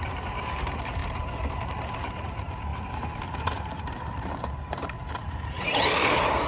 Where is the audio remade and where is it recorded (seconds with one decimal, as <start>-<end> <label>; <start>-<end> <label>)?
0.0-1.0 remade; 1.0-2.3 recorded; 2.3-6.5 remade